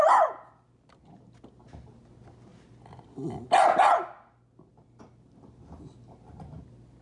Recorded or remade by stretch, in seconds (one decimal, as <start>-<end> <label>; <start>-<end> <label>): 0.0-7.0 recorded